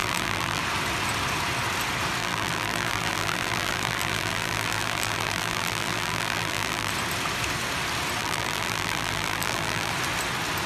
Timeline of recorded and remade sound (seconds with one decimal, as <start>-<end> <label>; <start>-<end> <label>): 0.0-0.6 remade; 0.6-2.2 recorded; 2.2-6.9 remade; 6.9-8.2 recorded; 8.2-9.9 remade; 9.9-10.7 recorded